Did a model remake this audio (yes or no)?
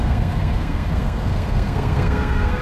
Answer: yes